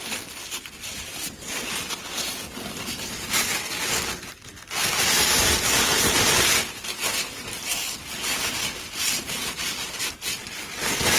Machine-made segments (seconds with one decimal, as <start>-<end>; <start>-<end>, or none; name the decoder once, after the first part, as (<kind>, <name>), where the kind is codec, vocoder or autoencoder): none